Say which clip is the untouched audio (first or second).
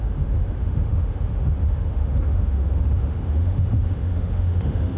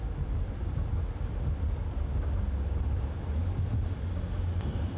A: second